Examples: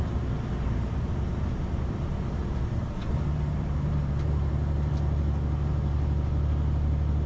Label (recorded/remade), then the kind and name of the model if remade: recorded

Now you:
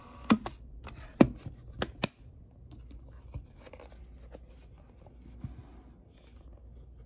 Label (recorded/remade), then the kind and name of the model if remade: recorded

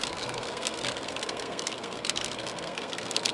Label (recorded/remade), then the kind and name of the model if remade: remade, codec, SNAC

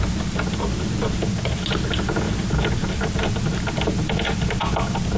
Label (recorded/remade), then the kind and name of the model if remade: recorded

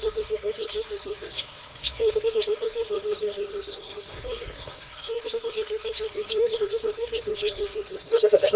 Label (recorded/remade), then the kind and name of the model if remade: remade, codec, SNAC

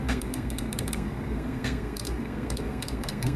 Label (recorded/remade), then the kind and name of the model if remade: remade, codec, SNAC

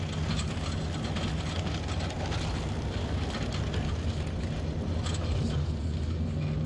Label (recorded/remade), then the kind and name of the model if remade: recorded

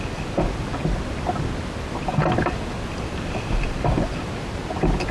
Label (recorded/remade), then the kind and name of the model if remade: recorded